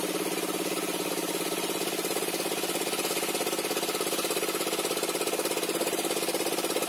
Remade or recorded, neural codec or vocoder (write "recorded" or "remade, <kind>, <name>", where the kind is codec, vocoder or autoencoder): recorded